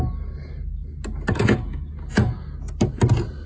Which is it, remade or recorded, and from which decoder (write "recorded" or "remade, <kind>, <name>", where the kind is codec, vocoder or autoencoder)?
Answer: recorded